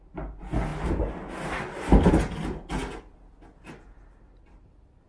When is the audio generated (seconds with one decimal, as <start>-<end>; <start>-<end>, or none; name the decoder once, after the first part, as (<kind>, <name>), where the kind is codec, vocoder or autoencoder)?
none